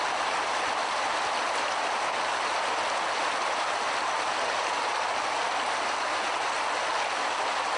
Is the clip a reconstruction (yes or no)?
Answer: no